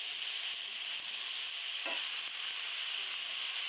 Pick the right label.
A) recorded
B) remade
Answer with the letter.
A